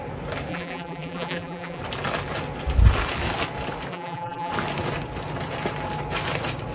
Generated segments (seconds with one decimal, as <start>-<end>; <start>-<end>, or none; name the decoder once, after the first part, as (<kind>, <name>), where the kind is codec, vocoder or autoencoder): 0.5-1.8 (vocoder, BigVGAN v2); 3.9-4.5